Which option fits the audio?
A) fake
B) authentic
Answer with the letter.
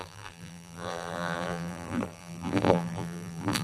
A